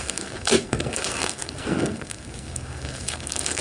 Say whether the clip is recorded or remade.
remade